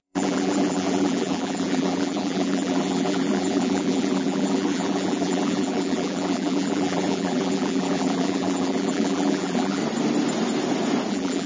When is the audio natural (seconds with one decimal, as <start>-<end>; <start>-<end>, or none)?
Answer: 9.8-11.1